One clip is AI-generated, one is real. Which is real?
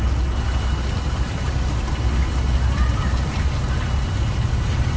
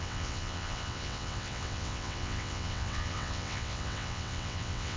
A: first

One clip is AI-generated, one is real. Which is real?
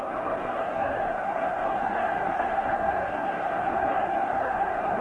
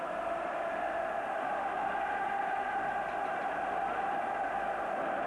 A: second